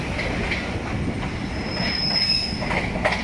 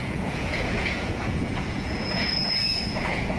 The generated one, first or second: second